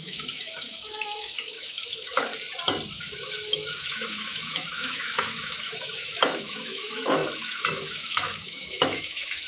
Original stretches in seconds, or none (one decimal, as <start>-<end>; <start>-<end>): 2.3-2.9